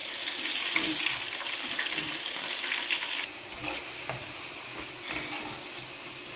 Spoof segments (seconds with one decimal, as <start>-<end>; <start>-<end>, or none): none